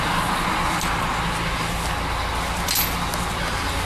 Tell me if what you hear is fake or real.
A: real